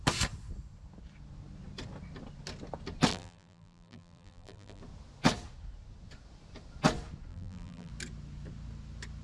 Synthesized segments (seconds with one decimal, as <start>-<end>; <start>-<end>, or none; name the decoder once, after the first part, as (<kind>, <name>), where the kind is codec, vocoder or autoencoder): 3.1-4.8 (vocoder, BigVGAN v2); 7.3-7.9